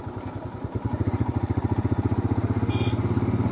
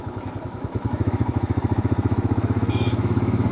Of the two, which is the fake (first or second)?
second